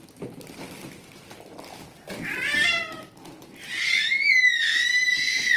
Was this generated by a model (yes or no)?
no